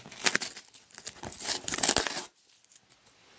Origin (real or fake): real